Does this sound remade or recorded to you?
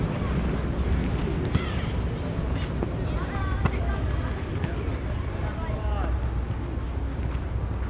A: recorded